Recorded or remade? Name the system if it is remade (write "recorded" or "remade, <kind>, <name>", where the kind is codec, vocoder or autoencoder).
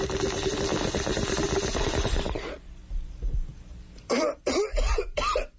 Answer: recorded